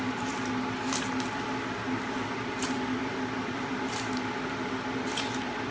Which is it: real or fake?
real